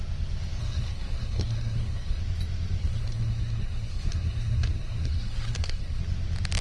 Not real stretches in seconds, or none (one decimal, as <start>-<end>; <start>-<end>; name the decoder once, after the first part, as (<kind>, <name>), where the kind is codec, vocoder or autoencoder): 0.6-2.2 (codec, SNAC); 2.8-6.0